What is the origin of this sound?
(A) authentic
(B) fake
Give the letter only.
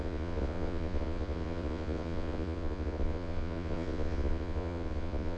B